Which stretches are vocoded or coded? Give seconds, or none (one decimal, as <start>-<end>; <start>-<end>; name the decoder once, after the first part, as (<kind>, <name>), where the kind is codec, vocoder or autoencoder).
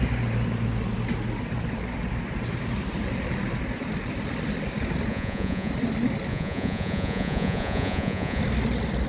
5.1-5.7 (vocoder, Vocos); 6.3-8.4